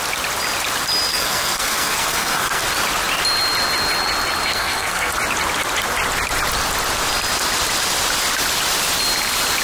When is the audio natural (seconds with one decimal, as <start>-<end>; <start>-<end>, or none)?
0.0-1.1; 2.6-4.5; 5.1-9.6